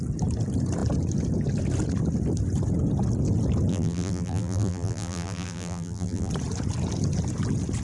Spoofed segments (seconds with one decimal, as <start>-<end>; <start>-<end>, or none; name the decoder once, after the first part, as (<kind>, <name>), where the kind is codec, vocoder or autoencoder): 3.7-6.3 (vocoder, BigVGAN v2)